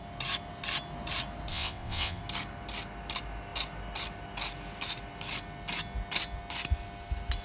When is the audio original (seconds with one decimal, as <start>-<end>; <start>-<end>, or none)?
0.0-1.5; 2.2-7.4